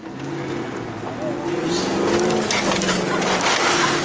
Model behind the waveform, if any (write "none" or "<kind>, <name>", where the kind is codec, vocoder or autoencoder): none